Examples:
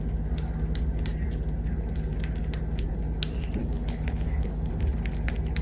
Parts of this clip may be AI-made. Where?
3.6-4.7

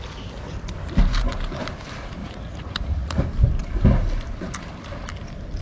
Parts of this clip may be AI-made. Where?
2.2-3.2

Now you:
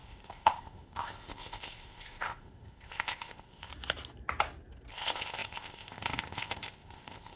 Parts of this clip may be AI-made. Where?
0.0-3.7; 4.9-7.4

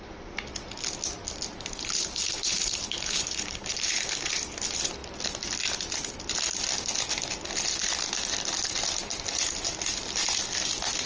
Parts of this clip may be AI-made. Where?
2.2-4.3

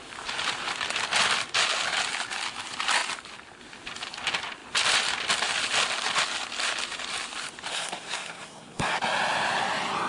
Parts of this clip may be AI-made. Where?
7.7-9.0

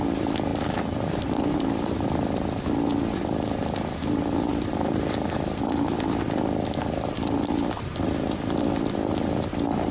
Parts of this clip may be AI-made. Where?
0.5-2.6; 4.5-5.6

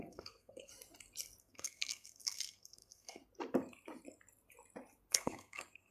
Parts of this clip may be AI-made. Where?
0.0-0.7; 1.4-3.2; 5.1-5.9